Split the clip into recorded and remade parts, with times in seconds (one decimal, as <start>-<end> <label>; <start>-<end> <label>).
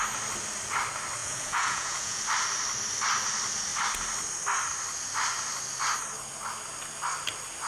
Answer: 0.0-1.2 recorded; 1.2-2.2 remade; 2.2-7.7 recorded